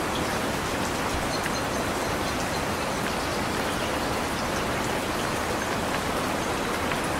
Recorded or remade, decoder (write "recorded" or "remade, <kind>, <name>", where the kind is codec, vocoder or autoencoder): recorded